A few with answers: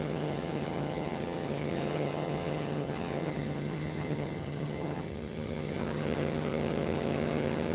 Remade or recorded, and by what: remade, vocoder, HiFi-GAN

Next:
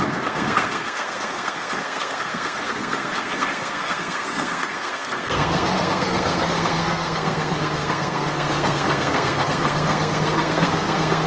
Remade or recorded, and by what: remade, codec, SNAC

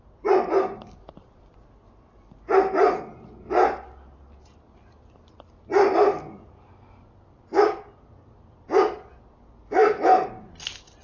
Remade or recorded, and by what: recorded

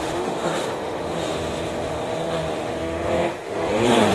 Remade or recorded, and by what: remade, autoencoder, DAC-VAE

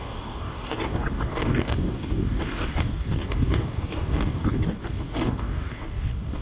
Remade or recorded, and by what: remade, codec, DAC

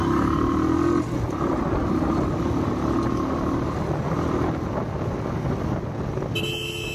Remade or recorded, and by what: recorded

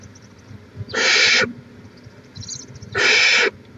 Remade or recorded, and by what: recorded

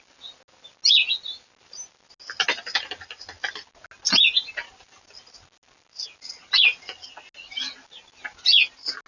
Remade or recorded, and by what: recorded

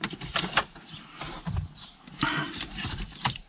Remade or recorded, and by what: remade, vocoder, BigVGAN v2